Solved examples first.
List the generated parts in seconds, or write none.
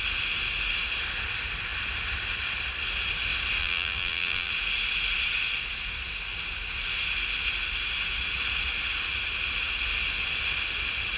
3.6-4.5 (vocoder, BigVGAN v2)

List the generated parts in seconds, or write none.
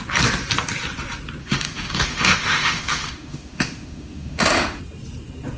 1.4-4.8 (autoencoder, DAC-VAE)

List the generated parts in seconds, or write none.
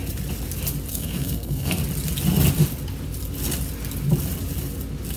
0.9-1.8 (codec, SNAC)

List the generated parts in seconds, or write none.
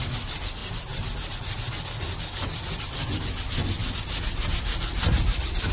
none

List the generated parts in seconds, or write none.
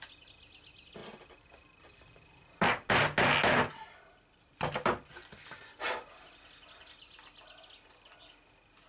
none